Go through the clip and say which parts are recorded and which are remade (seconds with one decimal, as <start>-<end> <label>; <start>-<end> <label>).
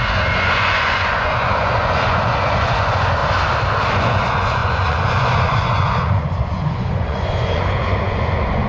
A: 0.0-3.2 remade; 3.2-3.9 recorded; 3.9-8.7 remade